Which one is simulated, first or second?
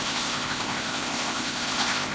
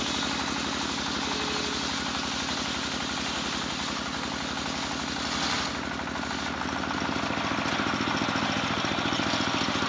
first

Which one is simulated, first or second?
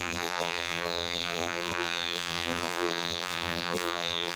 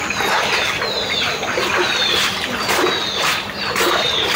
first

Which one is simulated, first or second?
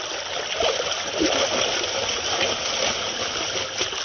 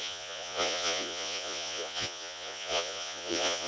second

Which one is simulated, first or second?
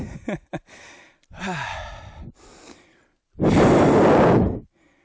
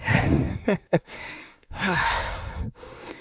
second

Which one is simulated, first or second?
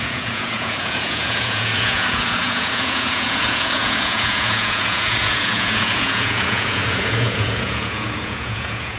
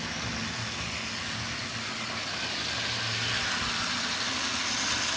first